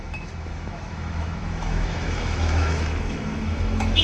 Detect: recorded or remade remade